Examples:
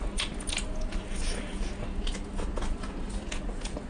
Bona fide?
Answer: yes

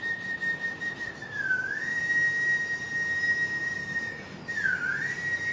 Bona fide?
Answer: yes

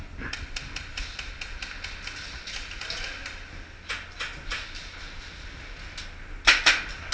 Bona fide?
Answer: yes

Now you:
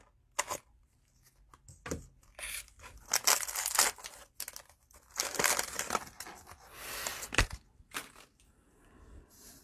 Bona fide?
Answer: yes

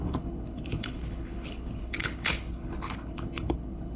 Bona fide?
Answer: no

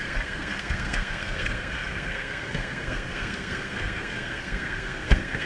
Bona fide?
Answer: no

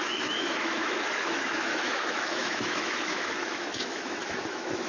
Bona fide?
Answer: no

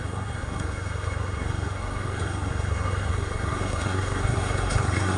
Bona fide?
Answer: no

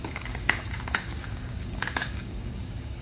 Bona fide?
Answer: no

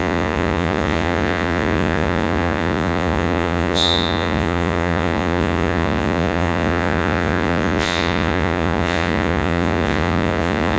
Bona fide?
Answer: no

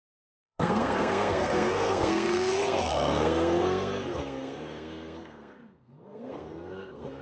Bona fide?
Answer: no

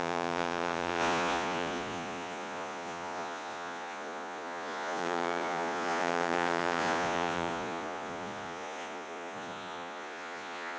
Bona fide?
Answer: no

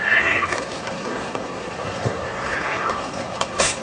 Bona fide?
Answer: no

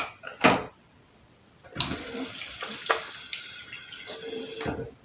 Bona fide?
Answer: yes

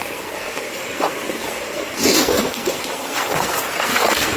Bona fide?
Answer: no